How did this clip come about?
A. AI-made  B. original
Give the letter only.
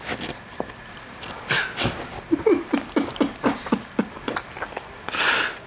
B